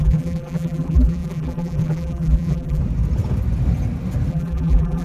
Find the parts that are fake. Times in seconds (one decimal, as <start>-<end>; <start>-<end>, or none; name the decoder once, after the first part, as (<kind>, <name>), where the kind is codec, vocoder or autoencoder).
0.0-2.8 (vocoder, BigVGAN v2); 4.3-5.0